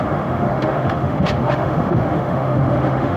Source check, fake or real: fake